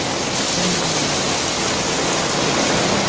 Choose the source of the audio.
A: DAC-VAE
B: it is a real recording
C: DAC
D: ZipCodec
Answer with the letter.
B